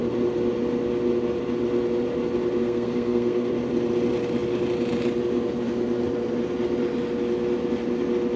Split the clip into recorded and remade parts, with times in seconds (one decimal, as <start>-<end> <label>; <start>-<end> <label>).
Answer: 0.0-2.6 recorded; 2.6-3.5 remade; 3.5-8.4 recorded